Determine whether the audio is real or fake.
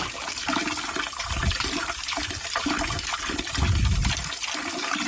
real